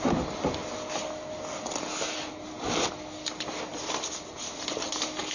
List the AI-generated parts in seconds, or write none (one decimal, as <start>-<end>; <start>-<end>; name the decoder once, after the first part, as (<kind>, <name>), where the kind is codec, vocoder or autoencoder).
none